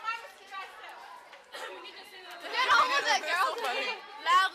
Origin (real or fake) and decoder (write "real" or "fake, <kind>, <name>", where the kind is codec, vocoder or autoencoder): fake, vocoder, BigVGAN v2